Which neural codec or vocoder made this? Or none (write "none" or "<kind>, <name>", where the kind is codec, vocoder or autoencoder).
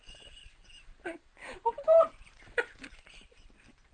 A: vocoder, BigVGAN v2